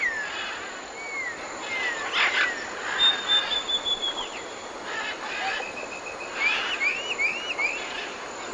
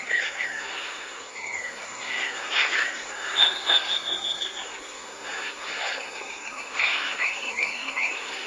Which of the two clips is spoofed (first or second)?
second